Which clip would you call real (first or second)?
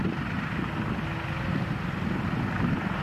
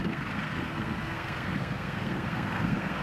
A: first